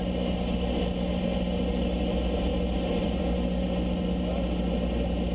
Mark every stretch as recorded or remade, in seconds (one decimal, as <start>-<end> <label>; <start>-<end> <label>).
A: 0.0-5.3 recorded